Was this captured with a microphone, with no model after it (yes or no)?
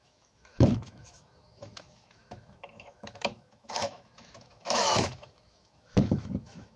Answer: no